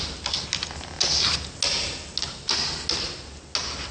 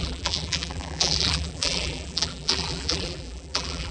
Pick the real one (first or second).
first